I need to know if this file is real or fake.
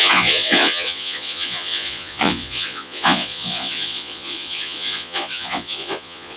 fake